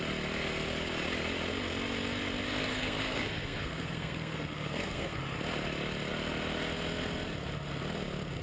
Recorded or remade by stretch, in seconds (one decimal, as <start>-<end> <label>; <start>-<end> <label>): 0.0-2.7 recorded; 2.7-5.2 remade; 5.2-8.4 recorded